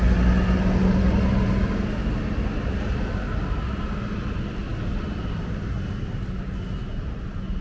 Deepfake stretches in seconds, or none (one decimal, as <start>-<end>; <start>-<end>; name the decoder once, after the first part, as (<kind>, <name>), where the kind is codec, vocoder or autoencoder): none